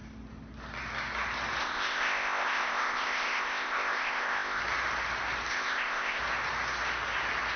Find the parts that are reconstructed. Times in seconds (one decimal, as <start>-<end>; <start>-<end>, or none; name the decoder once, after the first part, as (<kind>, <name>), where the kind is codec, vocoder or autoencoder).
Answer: 1.6-4.6 (codec, ZipCodec); 5.5-6.2